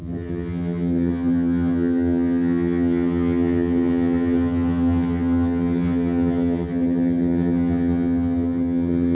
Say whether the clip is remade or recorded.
remade